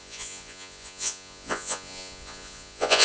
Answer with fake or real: fake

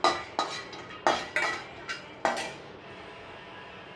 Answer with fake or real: real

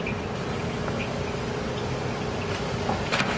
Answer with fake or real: real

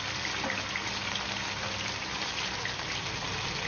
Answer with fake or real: real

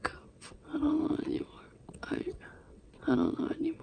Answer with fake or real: fake